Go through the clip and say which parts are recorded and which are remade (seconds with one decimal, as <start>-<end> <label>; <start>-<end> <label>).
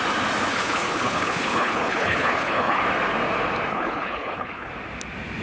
0.0-0.5 recorded; 0.5-2.8 remade; 2.8-3.7 recorded; 3.7-4.7 remade; 4.7-5.4 recorded